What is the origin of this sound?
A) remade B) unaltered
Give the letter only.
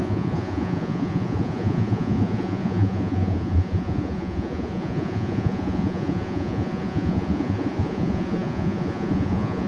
A